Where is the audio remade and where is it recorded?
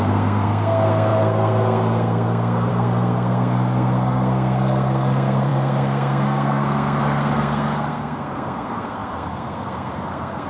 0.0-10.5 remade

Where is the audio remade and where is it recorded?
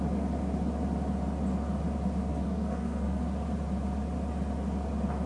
0.0-2.3 recorded; 2.3-3.2 remade; 3.2-5.3 recorded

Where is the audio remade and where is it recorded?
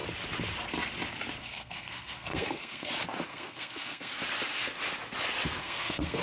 0.0-1.4 recorded; 1.4-2.9 remade; 2.9-3.3 recorded; 3.3-4.1 remade; 4.1-5.6 recorded; 5.6-6.2 remade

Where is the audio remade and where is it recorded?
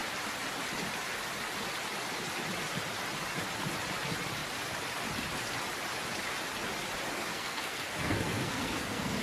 0.0-7.2 recorded; 7.2-9.2 remade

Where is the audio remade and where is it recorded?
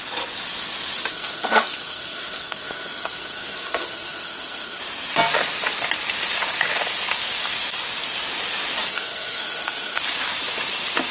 0.0-1.1 recorded; 1.1-4.8 remade; 4.8-8.9 recorded; 8.9-10.0 remade; 10.0-11.1 recorded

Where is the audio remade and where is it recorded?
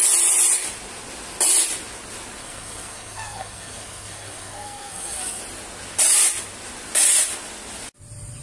0.0-2.4 recorded; 2.4-5.4 remade; 5.4-8.4 recorded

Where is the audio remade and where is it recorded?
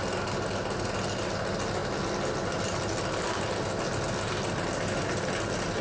0.0-5.8 recorded